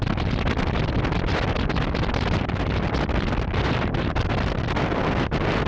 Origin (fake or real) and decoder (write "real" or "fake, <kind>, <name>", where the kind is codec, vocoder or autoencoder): real